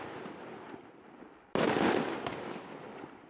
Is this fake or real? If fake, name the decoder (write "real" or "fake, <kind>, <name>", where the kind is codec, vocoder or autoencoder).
real